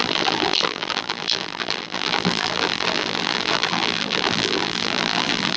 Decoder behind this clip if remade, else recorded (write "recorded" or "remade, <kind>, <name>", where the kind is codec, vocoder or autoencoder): remade, vocoder, BigVGAN v2